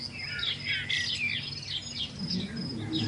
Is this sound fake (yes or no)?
no